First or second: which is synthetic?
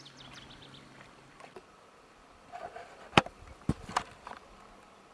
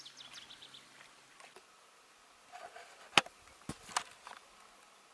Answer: first